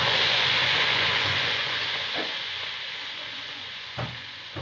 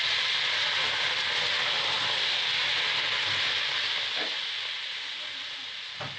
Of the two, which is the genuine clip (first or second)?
second